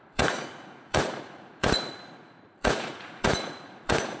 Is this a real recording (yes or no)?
no